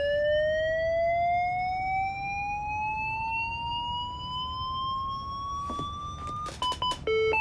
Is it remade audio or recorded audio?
recorded